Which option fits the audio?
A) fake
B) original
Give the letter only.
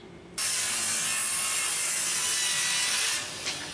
B